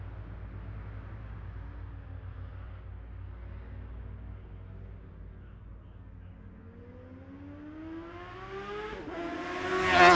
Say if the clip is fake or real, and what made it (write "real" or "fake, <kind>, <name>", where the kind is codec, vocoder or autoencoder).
real